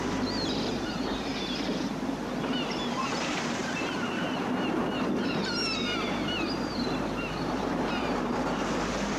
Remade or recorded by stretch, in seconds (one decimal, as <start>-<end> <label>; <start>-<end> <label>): 0.0-1.3 remade; 1.3-2.4 recorded; 2.4-9.2 remade